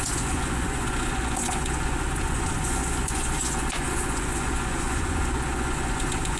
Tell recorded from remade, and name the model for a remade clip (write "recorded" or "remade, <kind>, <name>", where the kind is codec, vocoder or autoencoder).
remade, vocoder, Vocos